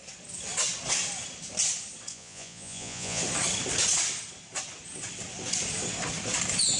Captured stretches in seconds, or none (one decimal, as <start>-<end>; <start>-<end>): 0.0-2.1; 3.2-6.8